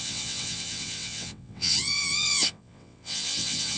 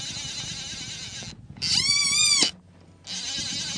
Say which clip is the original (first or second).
second